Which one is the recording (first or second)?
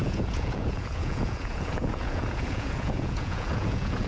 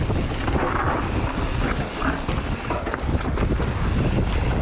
second